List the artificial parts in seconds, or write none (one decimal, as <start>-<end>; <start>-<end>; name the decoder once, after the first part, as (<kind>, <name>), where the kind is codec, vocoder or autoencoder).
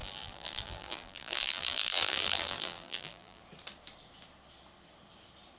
0.0-3.4 (vocoder, BigVGAN v2)